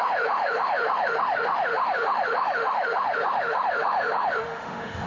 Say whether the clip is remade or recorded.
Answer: remade